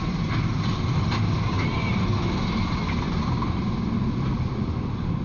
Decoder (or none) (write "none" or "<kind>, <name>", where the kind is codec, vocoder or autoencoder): none